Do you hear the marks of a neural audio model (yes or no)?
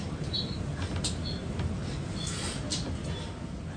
no